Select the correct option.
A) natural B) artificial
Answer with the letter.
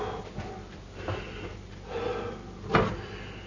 A